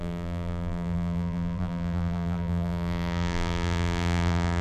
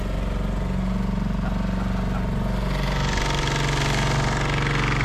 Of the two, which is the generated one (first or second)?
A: first